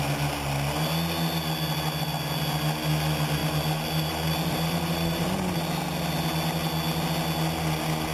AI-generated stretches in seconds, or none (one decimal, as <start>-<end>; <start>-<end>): 3.4-5.6